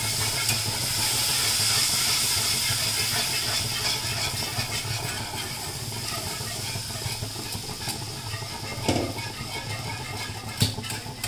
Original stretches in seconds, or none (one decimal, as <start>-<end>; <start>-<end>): 0.0-11.3